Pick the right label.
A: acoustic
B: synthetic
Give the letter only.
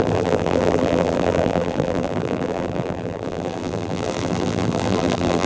B